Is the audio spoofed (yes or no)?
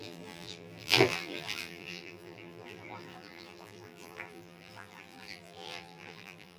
yes